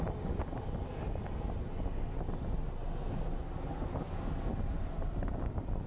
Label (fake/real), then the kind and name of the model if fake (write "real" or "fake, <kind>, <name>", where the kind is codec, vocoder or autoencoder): real